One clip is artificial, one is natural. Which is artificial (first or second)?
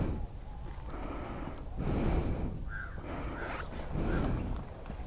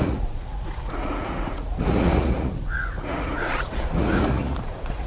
second